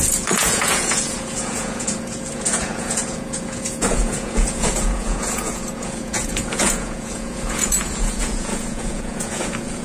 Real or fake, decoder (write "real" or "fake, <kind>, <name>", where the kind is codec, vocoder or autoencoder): fake, vocoder, Vocos